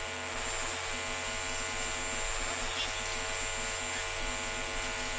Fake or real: real